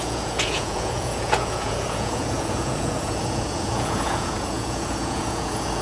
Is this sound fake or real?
fake